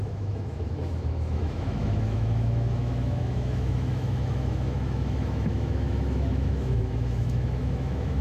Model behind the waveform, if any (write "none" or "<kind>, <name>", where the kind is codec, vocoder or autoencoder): autoencoder, DAC-VAE